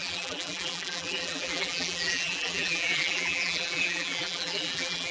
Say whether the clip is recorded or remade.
remade